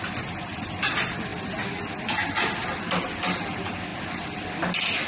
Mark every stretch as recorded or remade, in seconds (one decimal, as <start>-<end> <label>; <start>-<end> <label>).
0.0-5.1 recorded